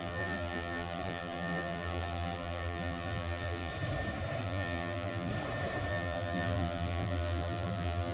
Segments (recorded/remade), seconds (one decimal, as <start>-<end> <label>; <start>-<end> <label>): 0.0-3.7 remade; 3.7-4.4 recorded; 4.4-5.3 remade; 5.3-5.9 recorded; 5.9-8.1 remade